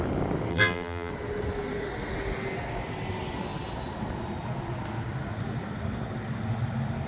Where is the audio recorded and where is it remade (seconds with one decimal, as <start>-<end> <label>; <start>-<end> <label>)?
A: 0.0-0.5 recorded; 0.5-1.1 remade; 1.1-7.1 recorded